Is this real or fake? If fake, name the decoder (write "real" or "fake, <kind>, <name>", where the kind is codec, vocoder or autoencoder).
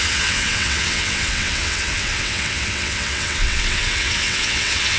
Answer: fake, vocoder, WaveNeXt